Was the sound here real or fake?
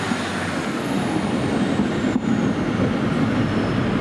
real